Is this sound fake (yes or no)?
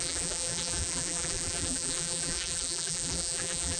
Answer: yes